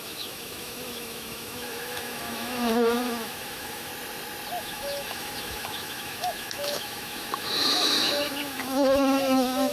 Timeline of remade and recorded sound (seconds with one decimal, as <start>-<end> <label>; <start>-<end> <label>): 0.0-3.9 remade; 3.9-4.6 recorded; 4.6-9.7 remade